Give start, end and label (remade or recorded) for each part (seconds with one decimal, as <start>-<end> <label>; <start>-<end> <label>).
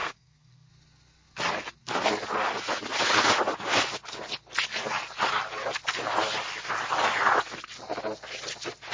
0.0-0.7 remade; 0.7-8.9 recorded